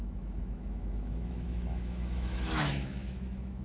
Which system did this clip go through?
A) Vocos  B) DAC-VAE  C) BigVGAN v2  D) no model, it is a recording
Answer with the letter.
B